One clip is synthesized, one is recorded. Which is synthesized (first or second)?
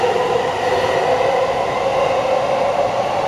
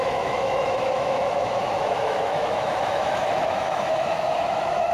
second